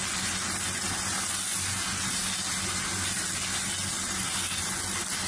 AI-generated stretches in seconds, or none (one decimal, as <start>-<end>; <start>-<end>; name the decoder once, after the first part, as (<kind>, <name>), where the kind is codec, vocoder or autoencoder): none